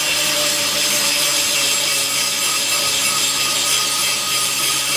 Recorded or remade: remade